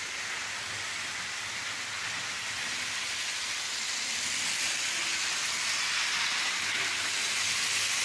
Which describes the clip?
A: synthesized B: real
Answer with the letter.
B